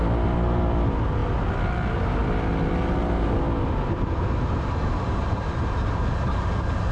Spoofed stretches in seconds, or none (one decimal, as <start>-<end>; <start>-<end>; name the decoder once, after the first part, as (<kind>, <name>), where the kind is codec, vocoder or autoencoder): none